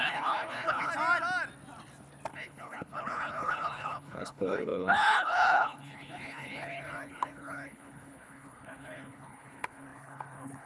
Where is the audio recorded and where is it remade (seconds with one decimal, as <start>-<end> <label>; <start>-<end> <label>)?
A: 0.0-0.9 remade; 0.9-2.3 recorded; 2.3-10.7 remade